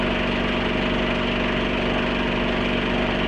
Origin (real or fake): real